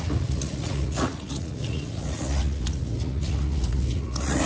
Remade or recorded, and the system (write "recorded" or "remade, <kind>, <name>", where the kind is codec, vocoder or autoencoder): remade, vocoder, Vocos